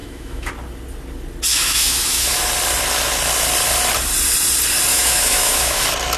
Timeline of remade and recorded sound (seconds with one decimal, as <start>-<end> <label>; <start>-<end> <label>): 0.0-0.5 remade; 0.5-1.5 recorded; 1.5-2.4 remade; 2.4-4.9 recorded; 4.9-5.8 remade; 5.8-6.2 recorded